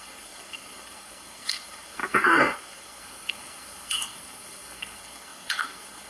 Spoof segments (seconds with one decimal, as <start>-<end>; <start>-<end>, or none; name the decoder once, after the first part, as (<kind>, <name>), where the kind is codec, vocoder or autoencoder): 0.0-6.1 (codec, SNAC)

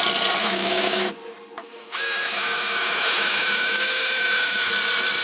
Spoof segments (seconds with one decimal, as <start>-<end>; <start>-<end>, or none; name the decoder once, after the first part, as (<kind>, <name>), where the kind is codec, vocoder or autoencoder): 0.4-1.1 (autoencoder, DAC-VAE); 1.6-4.7